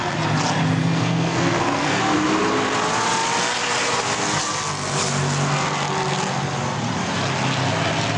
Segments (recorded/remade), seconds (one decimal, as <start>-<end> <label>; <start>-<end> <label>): 0.0-0.8 recorded; 0.8-2.0 remade; 2.0-8.2 recorded